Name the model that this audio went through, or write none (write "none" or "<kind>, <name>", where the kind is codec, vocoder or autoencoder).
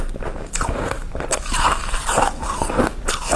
vocoder, BigVGAN v2